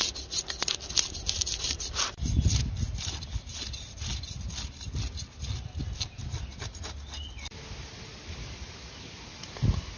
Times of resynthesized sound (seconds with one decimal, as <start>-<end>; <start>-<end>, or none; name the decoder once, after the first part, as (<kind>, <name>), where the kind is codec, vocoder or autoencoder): none